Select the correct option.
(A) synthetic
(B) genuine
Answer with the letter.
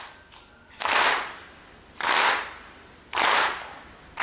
B